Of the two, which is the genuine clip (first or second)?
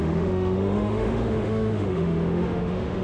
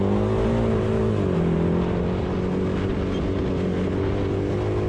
second